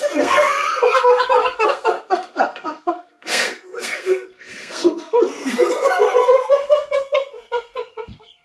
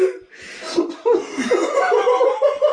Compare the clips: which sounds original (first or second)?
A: second